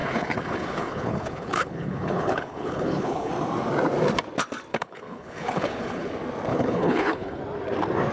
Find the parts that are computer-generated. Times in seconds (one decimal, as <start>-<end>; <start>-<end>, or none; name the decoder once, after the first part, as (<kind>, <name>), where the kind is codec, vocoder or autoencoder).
0.0-3.3 (codec, HILCodec); 4.7-6.1; 6.5-7.4